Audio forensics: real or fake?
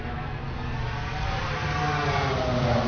real